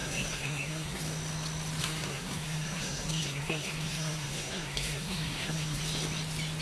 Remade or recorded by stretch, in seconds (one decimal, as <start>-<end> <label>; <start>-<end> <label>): 0.0-1.0 remade; 1.0-1.8 recorded; 1.8-5.8 remade; 5.8-6.6 recorded

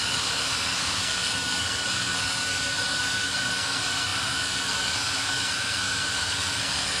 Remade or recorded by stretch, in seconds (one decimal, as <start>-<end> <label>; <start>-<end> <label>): 0.0-7.0 remade

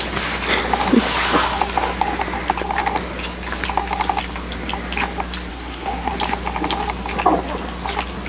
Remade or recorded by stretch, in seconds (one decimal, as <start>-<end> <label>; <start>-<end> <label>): 0.0-5.5 recorded; 5.5-6.1 remade; 6.1-8.3 recorded

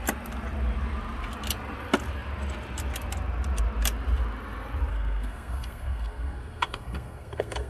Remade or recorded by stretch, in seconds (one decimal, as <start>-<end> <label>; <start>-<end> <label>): 0.0-4.9 recorded; 4.9-7.7 remade

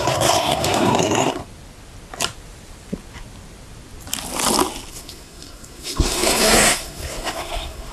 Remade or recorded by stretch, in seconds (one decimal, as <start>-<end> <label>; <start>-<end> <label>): 0.0-1.4 remade; 1.4-4.9 recorded; 4.9-7.9 remade

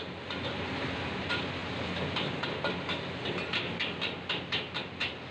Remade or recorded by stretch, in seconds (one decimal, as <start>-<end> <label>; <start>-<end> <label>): 0.0-5.3 recorded